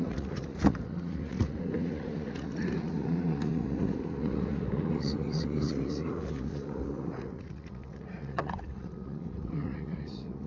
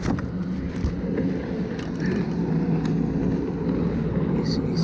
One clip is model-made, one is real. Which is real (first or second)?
second